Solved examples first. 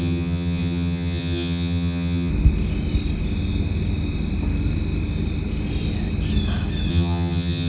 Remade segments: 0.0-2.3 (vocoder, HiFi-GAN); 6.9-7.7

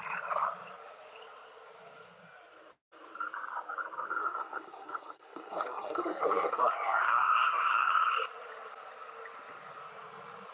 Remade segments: 4.2-8.1 (codec, SNAC)

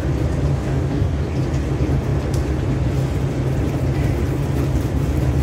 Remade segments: 0.5-1.2 (codec, DAC)

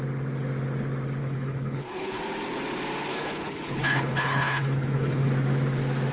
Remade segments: 1.2-2.2 (codec, HILCodec); 3.1-5.3

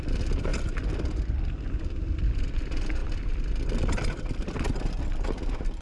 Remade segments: 0.0-0.5 (vocoder, BigVGAN v2); 1.4-3.0; 5.0-5.8

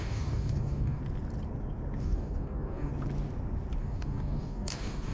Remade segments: 0.0-1.0 (codec, DAC); 2.0-2.9; 3.8-5.1

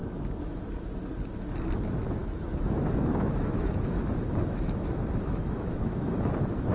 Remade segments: 0.0-0.6 (autoencoder, DAC-VAE); 2.2-6.2